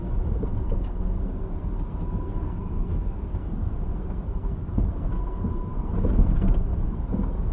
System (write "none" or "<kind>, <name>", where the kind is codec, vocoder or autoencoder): codec, SNAC